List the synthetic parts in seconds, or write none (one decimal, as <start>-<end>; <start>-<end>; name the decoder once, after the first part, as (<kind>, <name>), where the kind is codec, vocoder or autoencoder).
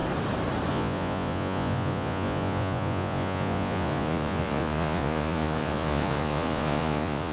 0.7-7.3 (vocoder, Vocos)